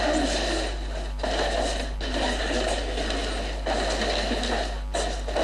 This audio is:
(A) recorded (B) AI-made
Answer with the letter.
A